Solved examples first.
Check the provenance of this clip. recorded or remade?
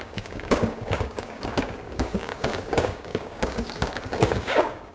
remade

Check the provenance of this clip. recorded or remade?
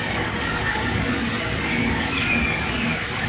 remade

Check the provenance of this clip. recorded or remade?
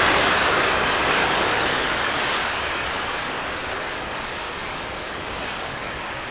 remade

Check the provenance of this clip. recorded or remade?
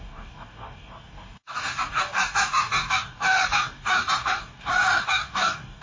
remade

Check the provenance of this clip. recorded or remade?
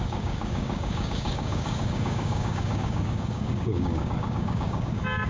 remade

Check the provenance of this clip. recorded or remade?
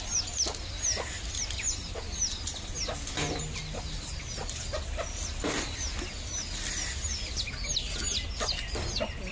recorded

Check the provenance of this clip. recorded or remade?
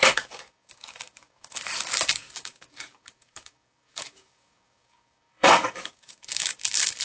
remade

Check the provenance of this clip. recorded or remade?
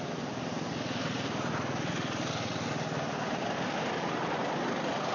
recorded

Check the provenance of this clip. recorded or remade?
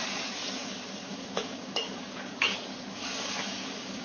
remade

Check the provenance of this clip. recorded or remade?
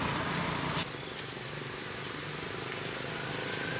recorded